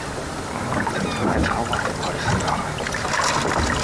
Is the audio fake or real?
fake